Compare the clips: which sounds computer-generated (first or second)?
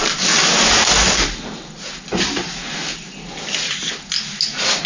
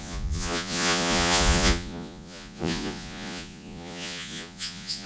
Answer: second